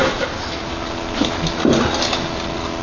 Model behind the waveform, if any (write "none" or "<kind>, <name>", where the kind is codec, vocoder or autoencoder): none